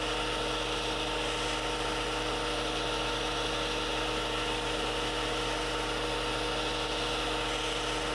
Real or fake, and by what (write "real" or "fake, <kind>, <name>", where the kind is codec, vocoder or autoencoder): real